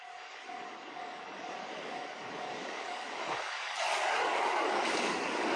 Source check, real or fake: fake